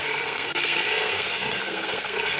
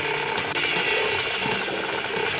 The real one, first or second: second